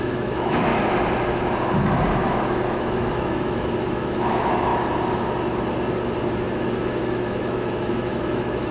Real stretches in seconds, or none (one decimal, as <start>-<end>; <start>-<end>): 0.7-2.3; 4.7-6.5